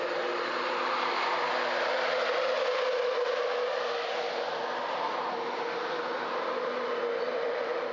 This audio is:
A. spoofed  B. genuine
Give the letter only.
B